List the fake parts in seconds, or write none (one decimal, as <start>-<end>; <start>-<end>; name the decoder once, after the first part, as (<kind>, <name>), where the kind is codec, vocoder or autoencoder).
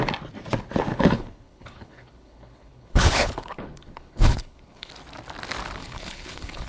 0.9-4.9 (codec, HILCodec); 5.8-6.7